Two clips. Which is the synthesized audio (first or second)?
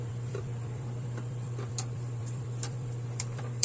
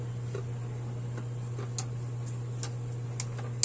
first